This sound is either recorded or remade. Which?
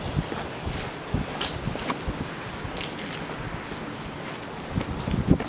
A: recorded